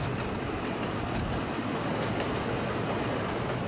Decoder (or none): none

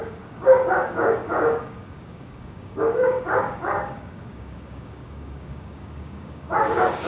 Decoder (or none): codec, DAC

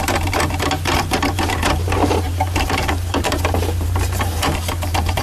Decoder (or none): vocoder, BigVGAN v2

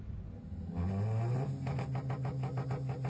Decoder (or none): none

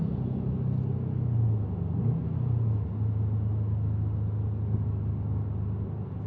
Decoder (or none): none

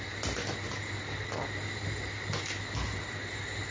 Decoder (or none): none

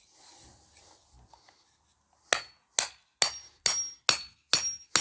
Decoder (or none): none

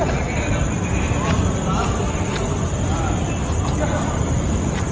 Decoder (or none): none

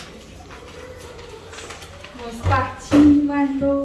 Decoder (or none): none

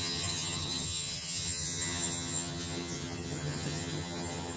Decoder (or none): vocoder, HiFi-GAN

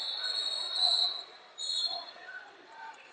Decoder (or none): vocoder, Vocos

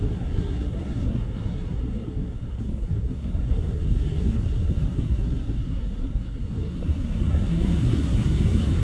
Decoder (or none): codec, SNAC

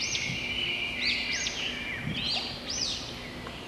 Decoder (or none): none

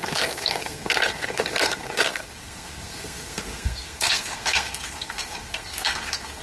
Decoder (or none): codec, SNAC